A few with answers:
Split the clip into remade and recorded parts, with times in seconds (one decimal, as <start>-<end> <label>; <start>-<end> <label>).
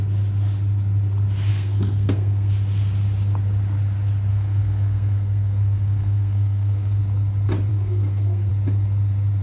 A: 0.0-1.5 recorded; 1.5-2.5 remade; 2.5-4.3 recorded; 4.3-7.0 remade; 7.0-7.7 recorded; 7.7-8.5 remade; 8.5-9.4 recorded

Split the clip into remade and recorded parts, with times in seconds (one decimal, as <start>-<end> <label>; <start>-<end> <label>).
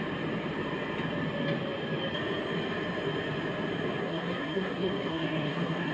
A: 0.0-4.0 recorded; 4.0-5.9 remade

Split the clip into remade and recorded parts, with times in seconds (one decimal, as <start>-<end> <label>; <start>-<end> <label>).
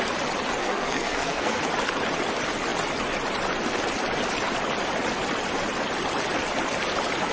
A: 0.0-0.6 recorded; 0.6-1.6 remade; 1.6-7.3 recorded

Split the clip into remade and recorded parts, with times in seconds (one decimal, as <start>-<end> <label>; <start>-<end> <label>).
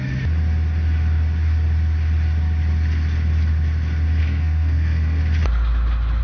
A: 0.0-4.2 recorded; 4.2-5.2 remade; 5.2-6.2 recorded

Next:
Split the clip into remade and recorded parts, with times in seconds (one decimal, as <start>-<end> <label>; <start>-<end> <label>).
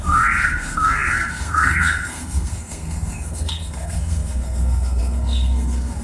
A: 0.0-6.0 remade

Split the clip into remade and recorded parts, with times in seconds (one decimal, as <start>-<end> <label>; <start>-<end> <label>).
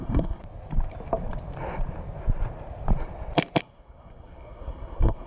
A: 0.0-0.4 remade; 0.4-3.6 recorded; 3.6-5.3 remade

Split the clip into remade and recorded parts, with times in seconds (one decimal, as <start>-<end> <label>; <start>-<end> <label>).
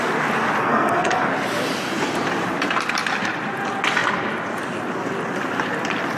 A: 0.0-0.6 recorded; 0.6-1.3 remade; 1.3-6.2 recorded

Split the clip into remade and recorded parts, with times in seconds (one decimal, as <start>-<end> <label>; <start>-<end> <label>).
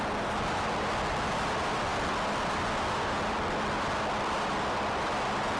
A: 0.0-5.6 recorded